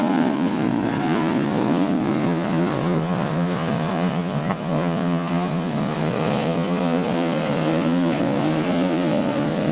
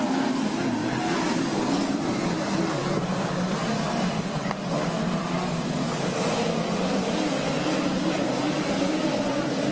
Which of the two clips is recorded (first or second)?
second